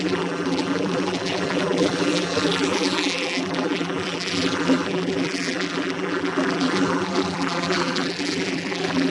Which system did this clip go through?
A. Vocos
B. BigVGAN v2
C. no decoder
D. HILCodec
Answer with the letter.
B